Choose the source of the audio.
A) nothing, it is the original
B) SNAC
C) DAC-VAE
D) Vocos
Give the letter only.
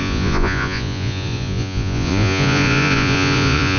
D